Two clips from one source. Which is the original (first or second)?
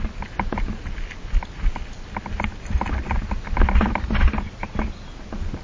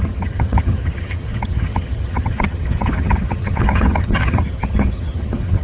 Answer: first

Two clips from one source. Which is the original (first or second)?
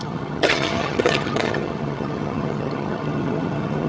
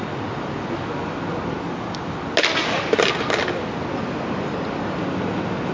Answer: second